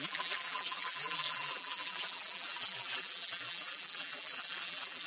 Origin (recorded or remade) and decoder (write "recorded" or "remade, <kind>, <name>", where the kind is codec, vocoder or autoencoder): remade, vocoder, BigVGAN v2